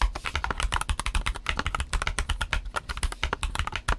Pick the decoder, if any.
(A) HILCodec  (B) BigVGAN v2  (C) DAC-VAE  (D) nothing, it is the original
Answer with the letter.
D